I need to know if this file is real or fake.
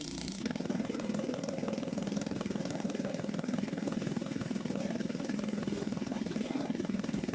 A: fake